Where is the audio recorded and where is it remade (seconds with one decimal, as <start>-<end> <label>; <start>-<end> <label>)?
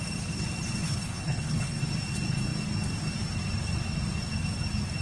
0.0-0.8 recorded; 0.8-1.8 remade; 1.8-5.0 recorded